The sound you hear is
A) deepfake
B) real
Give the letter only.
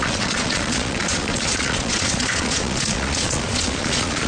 A